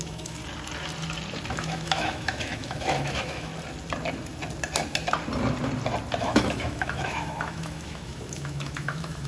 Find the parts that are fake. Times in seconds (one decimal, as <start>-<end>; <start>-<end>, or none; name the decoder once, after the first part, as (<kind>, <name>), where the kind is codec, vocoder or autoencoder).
0.0-0.4 (autoencoder, DAC-VAE); 1.5-3.5; 6.2-9.3